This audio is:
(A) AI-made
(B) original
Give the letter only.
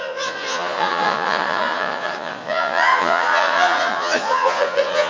A